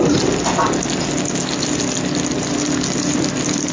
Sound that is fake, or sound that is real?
real